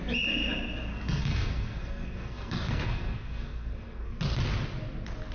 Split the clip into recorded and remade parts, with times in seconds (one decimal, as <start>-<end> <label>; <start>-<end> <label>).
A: 0.0-0.9 recorded; 0.9-4.1 remade; 4.1-5.3 recorded